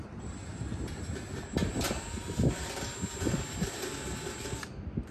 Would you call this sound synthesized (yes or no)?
no